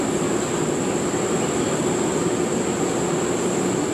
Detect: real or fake real